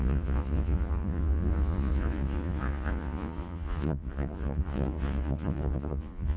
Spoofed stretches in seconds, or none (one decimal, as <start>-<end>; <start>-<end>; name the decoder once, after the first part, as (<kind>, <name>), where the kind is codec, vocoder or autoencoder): 0.0-6.4 (vocoder, Vocos)